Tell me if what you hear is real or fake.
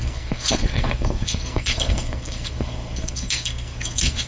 fake